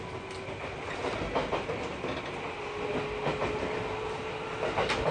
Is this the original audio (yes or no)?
yes